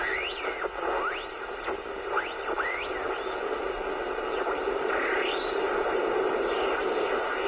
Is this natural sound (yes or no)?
yes